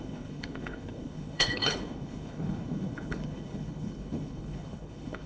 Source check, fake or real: fake